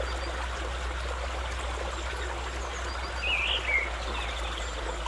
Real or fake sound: real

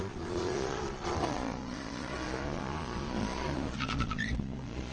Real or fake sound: fake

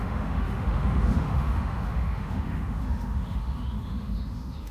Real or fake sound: fake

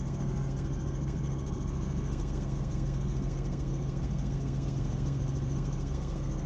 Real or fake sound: fake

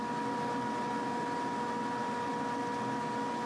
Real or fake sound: real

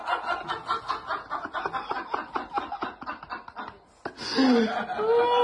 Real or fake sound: real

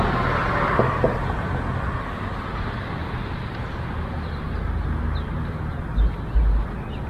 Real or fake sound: real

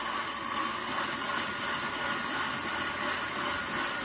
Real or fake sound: real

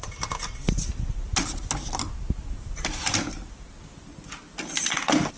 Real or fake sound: real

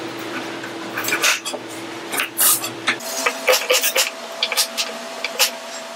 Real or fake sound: fake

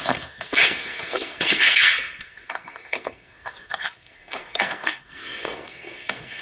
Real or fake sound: fake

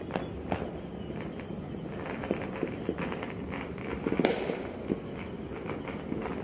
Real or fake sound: real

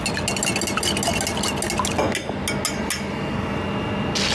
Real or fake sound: real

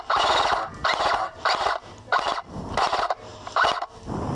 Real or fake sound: fake